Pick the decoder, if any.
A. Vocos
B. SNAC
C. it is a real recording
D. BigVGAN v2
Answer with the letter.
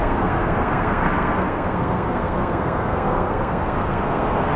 B